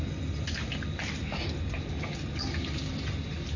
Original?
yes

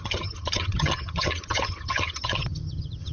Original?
no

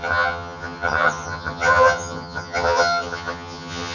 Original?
no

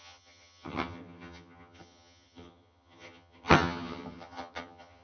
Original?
no